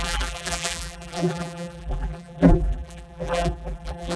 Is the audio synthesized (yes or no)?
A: yes